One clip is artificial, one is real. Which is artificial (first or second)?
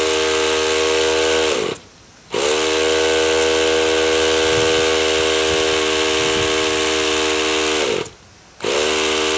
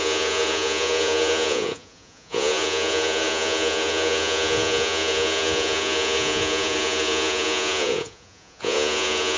second